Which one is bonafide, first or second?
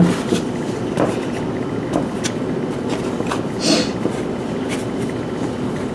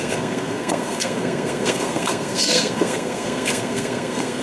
first